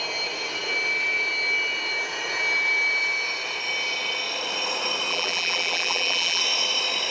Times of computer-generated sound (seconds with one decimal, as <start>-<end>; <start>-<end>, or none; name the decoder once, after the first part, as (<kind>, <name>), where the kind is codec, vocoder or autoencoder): 5.1-6.4 (vocoder, BigVGAN v2)